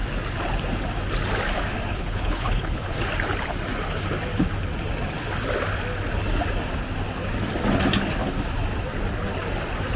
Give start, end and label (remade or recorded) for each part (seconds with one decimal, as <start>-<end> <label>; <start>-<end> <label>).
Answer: 0.0-1.9 recorded; 1.9-3.0 remade; 3.0-10.0 recorded